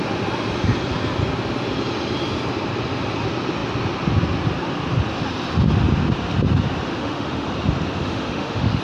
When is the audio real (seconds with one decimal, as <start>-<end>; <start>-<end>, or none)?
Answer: 0.0-6.9; 7.5-8.0